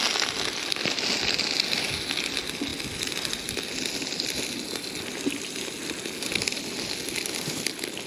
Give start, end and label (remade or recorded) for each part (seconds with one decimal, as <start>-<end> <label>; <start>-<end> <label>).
0.0-8.1 recorded